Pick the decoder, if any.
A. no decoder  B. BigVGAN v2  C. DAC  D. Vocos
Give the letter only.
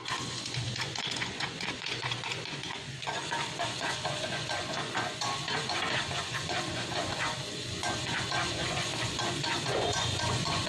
D